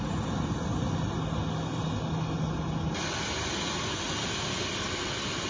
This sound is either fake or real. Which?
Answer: real